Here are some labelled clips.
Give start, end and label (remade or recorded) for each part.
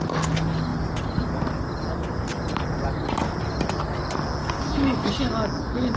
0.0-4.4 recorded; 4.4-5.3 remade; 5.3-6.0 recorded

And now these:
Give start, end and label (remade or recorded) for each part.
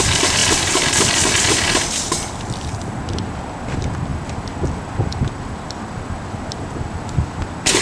0.0-7.8 recorded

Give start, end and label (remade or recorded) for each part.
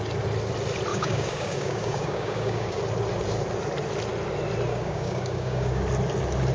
0.0-0.9 recorded; 0.9-2.8 remade; 2.8-4.7 recorded; 4.7-5.8 remade; 5.8-6.5 recorded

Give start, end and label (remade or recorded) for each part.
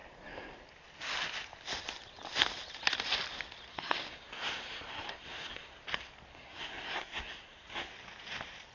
0.0-3.7 recorded; 3.7-5.8 remade; 5.8-6.3 recorded; 6.3-7.9 remade; 7.9-8.7 recorded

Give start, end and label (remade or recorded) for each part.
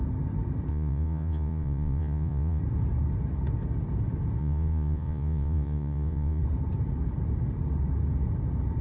0.0-0.7 recorded; 0.7-2.6 remade; 2.6-4.4 recorded; 4.4-6.4 remade; 6.4-8.8 recorded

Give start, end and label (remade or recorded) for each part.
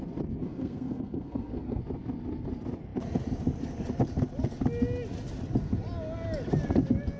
0.0-0.4 recorded; 0.4-1.8 remade; 1.8-7.2 recorded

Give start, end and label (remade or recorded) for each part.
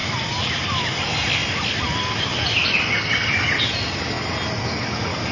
0.0-5.3 recorded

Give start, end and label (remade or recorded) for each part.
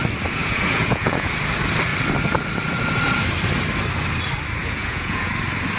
0.0-0.4 recorded; 0.4-1.3 remade; 1.3-4.6 recorded; 4.6-5.3 remade; 5.3-5.8 recorded